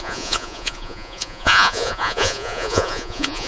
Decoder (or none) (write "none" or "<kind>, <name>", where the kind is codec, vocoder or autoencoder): vocoder, Vocos